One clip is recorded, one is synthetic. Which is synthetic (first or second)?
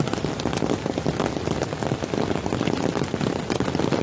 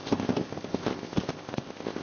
second